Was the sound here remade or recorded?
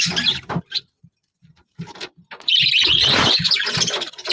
recorded